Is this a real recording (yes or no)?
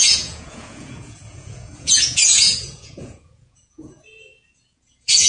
no